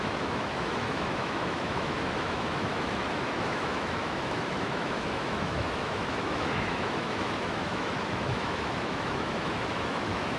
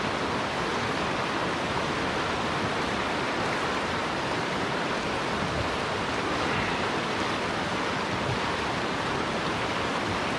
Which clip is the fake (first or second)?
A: first